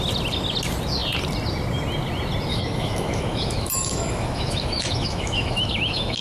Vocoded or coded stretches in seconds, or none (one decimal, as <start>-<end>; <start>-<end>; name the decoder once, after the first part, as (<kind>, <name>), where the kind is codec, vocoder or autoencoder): 2.5-6.2 (autoencoder, DAC-VAE)